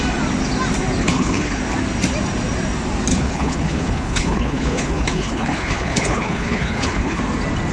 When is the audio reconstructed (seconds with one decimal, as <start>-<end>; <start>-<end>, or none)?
1.0-1.6; 3.1-7.2